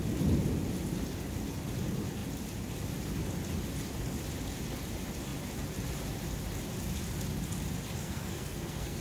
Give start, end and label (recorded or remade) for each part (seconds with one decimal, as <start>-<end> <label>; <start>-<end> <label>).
0.0-8.0 recorded; 8.0-9.0 remade